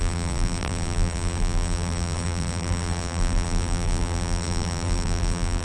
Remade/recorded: remade